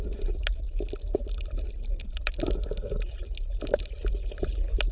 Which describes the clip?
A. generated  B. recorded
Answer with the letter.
B